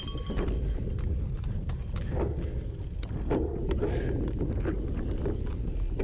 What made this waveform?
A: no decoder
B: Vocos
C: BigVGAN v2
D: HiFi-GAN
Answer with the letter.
A